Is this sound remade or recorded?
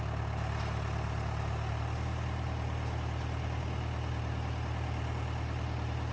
recorded